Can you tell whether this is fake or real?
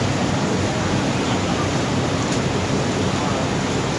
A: real